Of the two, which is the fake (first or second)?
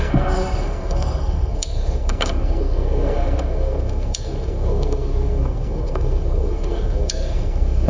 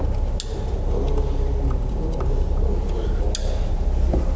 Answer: first